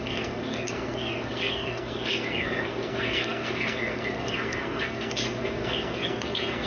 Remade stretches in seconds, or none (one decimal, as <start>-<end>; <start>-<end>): 0.0-6.7